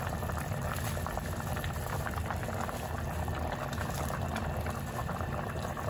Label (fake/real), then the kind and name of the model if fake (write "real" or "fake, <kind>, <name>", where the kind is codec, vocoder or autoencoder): real